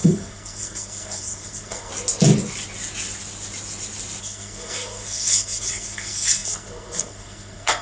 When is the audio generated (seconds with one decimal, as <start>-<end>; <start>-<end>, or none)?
0.0-1.9; 4.2-7.8